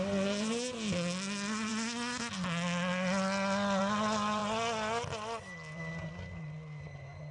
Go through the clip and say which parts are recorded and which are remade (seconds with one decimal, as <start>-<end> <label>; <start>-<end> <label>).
0.0-7.3 recorded